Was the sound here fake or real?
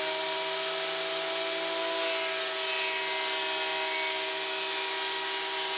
real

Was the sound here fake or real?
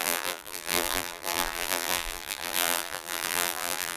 fake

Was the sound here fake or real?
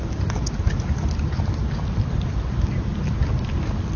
real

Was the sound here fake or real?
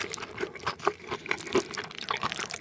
fake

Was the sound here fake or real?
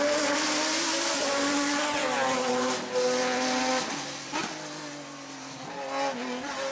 real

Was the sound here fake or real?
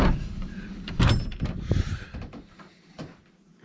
fake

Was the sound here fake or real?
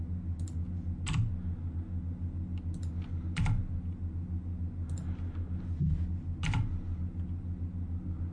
real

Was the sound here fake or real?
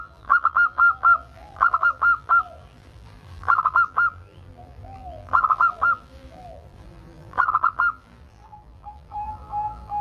fake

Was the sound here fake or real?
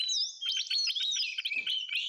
real